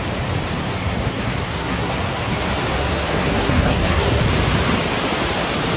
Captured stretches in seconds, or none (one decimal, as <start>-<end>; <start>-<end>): 0.0-0.7; 2.4-2.8; 4.2-5.8